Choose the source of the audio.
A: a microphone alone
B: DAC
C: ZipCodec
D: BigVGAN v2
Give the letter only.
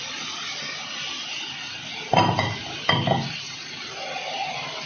A